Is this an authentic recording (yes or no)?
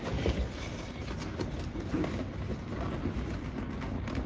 yes